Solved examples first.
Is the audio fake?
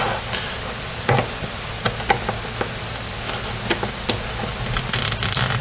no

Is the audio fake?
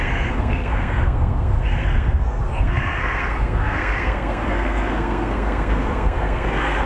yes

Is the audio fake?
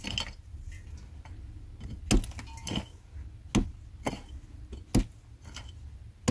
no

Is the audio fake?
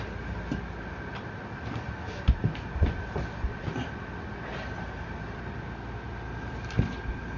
no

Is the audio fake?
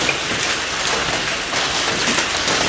no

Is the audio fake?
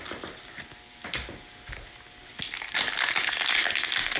no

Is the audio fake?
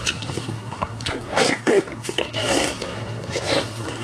yes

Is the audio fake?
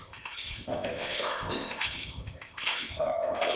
yes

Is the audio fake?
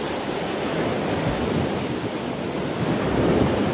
no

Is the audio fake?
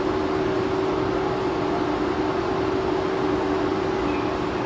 no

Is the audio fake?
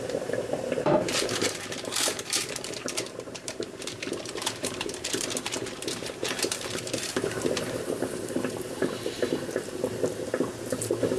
yes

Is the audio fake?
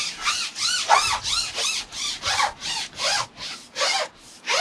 no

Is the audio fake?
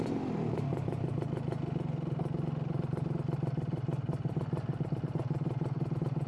no